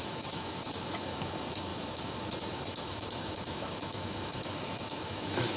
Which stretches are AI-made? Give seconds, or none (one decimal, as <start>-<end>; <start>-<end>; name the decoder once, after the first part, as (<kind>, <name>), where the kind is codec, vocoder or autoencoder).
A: 0.0-5.6 (autoencoder, DAC-VAE)